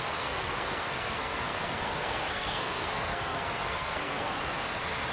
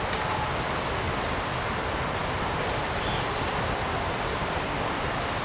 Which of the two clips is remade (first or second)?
first